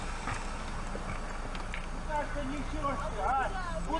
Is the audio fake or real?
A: real